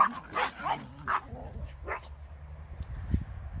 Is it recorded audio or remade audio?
recorded